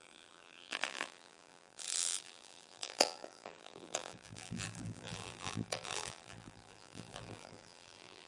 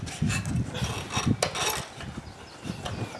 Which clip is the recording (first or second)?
second